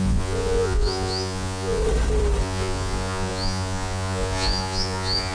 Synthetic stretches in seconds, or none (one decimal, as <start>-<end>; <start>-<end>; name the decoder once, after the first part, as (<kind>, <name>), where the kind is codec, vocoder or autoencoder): 0.0-1.8 (vocoder, Vocos); 2.4-5.3